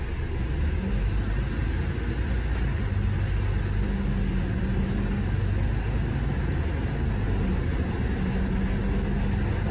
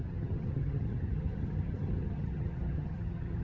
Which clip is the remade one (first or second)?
second